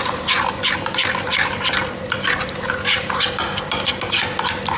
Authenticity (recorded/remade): recorded